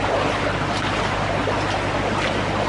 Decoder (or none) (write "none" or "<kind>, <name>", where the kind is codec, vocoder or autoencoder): none